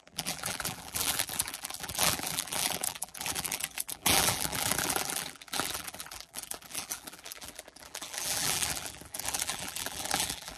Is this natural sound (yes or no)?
no